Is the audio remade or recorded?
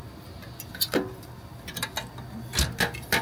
recorded